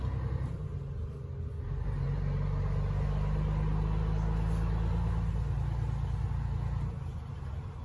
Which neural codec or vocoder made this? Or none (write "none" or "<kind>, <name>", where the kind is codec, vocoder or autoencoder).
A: none